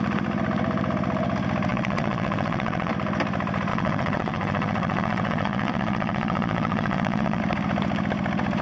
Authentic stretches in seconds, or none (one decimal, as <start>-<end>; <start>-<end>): 0.0-1.7; 2.9-3.7; 7.4-8.6